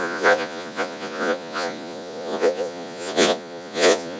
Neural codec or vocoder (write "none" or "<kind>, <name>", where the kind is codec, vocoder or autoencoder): vocoder, Vocos